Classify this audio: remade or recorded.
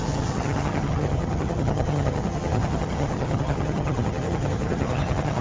remade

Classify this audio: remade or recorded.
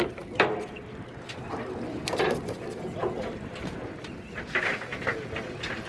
recorded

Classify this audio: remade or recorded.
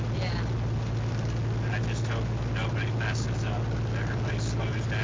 recorded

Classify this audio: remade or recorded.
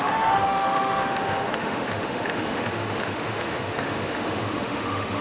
remade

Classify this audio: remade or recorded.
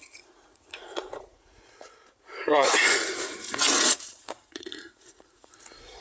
remade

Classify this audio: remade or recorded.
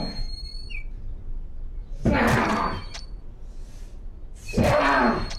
recorded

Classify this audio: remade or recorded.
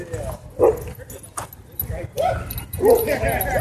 recorded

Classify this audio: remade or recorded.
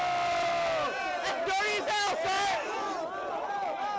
recorded